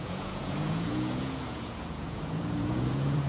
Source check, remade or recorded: remade